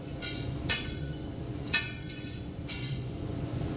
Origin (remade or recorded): remade